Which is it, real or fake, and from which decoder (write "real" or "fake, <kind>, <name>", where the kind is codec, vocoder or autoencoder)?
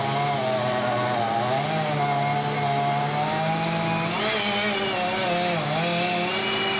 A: real